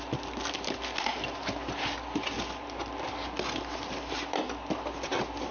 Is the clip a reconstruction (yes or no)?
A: no